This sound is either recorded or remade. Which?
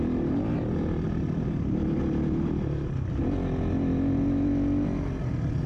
recorded